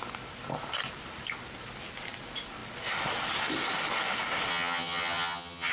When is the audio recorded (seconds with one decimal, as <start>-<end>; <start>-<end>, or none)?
0.0-4.5